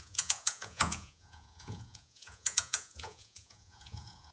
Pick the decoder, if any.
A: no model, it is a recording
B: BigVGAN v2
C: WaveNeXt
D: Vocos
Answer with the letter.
D